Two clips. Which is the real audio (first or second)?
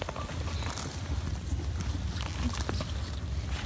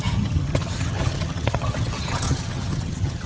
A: first